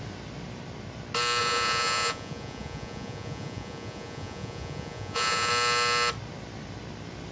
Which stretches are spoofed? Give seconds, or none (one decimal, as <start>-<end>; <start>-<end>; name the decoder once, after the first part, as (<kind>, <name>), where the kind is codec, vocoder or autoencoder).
1.4-5.5 (vocoder, Vocos)